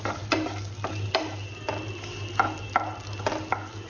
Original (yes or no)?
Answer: yes